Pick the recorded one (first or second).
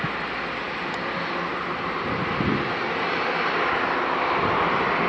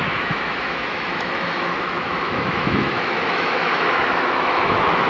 first